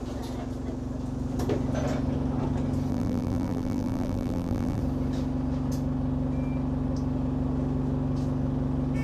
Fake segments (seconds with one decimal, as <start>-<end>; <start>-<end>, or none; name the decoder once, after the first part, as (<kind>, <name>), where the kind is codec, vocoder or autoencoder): 2.9-4.8 (vocoder, BigVGAN v2)